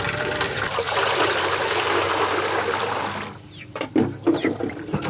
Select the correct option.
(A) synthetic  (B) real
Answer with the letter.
A